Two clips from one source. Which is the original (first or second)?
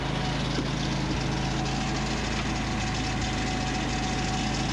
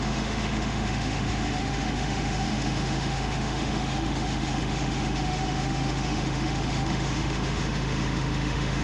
first